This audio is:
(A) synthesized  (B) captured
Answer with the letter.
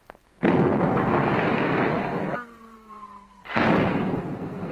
A